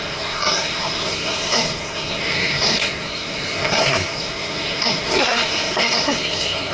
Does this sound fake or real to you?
fake